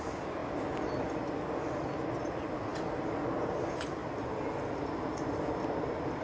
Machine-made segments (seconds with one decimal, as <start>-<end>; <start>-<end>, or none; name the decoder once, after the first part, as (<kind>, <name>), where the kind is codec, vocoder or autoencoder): none